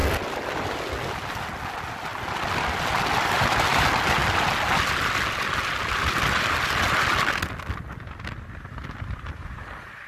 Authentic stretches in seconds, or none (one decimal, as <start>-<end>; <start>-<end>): 0.0-10.1

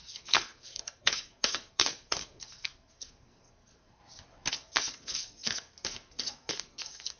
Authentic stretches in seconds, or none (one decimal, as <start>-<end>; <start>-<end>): 4.0-4.5

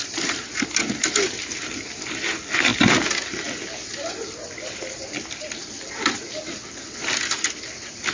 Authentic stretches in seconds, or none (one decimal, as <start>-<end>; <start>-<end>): 0.0-8.1

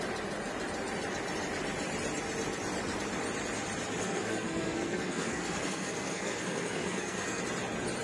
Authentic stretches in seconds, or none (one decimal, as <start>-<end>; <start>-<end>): 0.0-4.0; 7.4-8.0

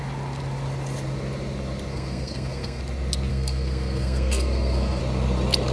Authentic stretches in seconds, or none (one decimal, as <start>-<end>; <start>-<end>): 0.0-1.9; 2.8-3.3; 5.0-5.7

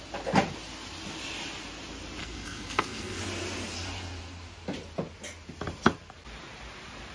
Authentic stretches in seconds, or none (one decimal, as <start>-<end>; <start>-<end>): 0.0-2.2; 3.2-7.1